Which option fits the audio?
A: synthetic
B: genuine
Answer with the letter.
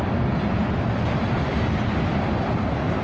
B